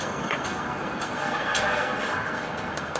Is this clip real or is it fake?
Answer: fake